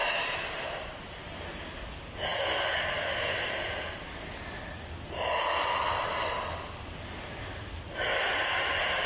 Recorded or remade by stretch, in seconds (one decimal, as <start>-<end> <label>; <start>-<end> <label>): 0.0-1.9 remade; 1.9-9.1 recorded